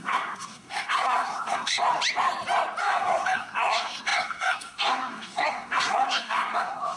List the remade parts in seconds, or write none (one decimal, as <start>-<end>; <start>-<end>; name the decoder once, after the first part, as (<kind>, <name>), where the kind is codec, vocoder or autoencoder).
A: 0.0-1.8 (codec, SNAC); 2.8-7.0